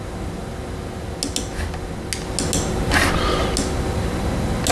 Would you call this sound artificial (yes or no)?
no